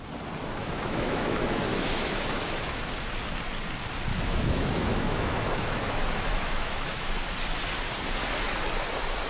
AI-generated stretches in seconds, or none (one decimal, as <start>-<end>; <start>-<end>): 0.6-2.8; 4.1-7.2